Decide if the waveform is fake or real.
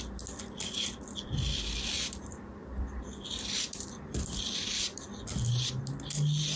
real